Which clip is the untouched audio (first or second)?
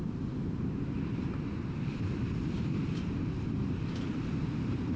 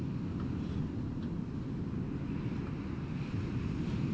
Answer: second